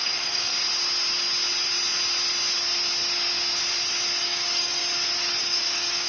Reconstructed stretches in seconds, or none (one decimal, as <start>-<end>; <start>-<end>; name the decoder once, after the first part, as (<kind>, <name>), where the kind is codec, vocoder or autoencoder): 0.0-0.5 (codec, DAC); 4.2-4.8; 5.4-6.1